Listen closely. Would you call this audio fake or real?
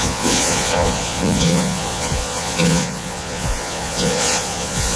fake